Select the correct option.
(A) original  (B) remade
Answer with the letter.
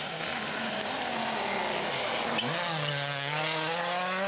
A